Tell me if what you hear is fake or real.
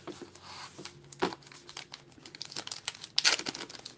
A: real